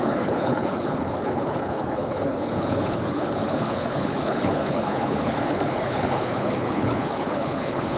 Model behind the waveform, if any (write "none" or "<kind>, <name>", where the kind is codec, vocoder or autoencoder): codec, HILCodec